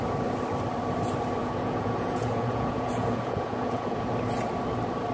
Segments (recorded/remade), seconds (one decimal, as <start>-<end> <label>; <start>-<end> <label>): 0.0-1.4 recorded; 1.4-4.0 remade; 4.0-5.1 recorded